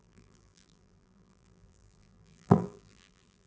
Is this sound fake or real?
fake